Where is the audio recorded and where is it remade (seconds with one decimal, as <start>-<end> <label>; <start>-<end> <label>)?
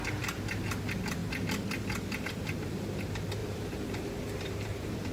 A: 0.0-3.4 recorded; 3.4-5.1 remade